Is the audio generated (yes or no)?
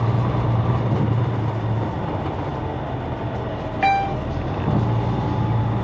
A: no